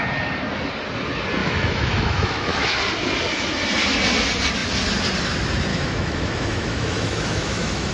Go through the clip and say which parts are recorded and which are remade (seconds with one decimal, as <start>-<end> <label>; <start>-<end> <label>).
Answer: 0.0-1.4 recorded; 1.4-2.7 remade; 2.7-5.7 recorded; 5.7-7.9 remade